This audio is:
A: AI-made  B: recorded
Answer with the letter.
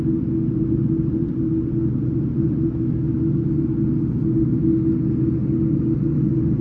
B